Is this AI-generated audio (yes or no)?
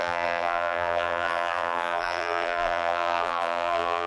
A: yes